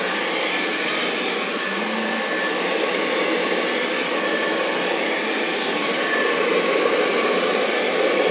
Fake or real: real